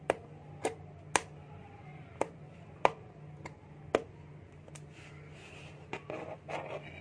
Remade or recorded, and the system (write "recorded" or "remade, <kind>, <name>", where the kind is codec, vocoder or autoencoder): recorded